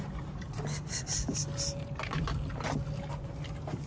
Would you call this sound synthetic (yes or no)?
no